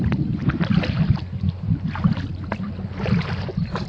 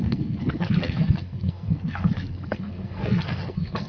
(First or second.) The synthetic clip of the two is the second